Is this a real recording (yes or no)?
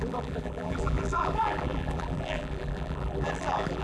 no